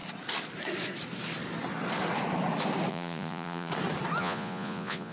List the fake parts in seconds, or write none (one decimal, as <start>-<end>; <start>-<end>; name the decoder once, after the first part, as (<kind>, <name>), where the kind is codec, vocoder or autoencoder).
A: 2.9-3.7 (vocoder, Vocos); 4.2-5.1

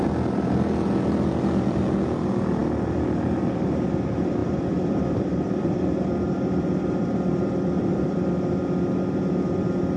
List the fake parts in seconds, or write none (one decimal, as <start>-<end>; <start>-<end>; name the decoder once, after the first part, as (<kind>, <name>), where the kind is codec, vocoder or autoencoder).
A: 2.6-3.4 (vocoder, BigVGAN v2); 4.4-8.3

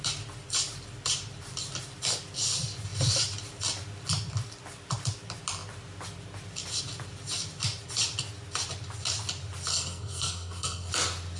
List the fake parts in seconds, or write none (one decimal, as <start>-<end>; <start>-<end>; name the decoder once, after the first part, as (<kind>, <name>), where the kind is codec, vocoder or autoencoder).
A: 9.7-10.9 (codec, SNAC)